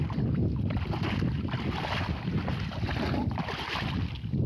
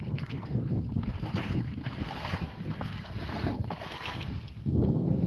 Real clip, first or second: first